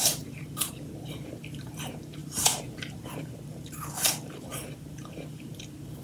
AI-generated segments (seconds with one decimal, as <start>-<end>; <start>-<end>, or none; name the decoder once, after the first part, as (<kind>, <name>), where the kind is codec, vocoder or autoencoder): 0.0-6.0 (vocoder, BigVGAN v2)

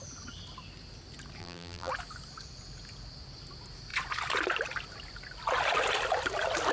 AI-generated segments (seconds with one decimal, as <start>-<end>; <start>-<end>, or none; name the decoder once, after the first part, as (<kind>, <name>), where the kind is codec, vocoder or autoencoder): 1.4-1.9 (vocoder, BigVGAN v2)

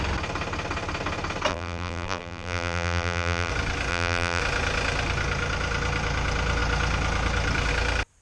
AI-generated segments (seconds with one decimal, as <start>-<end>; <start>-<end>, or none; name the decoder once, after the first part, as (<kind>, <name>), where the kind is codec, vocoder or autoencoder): 1.5-3.5 (vocoder, BigVGAN v2); 3.9-4.4